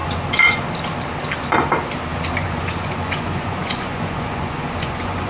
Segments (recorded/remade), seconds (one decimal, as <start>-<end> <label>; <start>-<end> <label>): 0.0-0.6 remade; 0.6-2.1 recorded; 2.1-5.3 remade